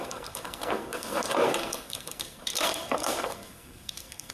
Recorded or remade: remade